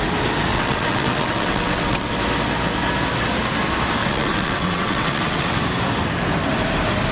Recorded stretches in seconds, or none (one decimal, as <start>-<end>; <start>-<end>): 0.0-0.5; 2.1-4.0; 5.6-7.1